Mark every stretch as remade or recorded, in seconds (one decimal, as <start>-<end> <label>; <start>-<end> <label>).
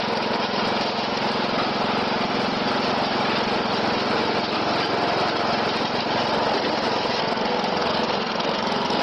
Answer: 0.0-7.2 recorded; 7.2-9.0 remade